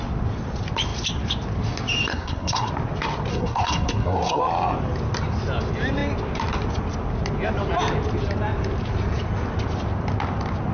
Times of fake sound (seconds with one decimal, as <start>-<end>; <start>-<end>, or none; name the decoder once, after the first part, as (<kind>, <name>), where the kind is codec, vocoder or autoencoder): 2.1-2.7 (codec, SNAC); 3.3-4.4